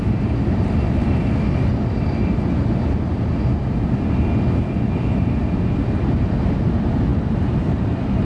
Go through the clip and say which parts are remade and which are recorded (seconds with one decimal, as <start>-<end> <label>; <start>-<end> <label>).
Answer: 0.0-8.2 recorded